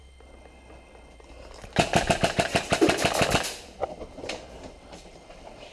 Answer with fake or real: real